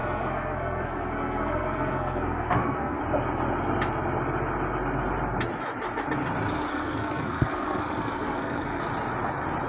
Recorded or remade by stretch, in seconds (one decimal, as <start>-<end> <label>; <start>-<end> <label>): 0.0-3.0 remade; 3.0-6.7 recorded; 6.7-8.8 remade; 8.8-9.7 recorded